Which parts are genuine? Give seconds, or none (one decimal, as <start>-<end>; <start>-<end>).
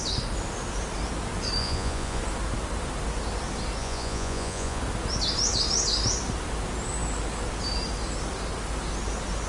0.0-1.6; 2.2-3.8; 4.8-9.5